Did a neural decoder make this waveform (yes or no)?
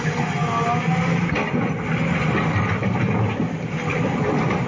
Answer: no